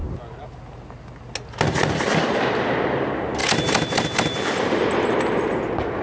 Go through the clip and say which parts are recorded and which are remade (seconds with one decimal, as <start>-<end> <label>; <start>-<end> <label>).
0.0-6.0 recorded